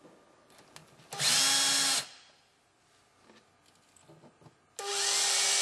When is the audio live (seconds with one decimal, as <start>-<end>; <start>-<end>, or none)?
0.0-5.6